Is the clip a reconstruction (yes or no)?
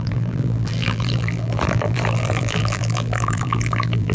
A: yes